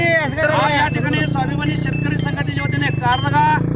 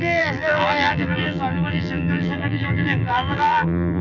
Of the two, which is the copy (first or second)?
second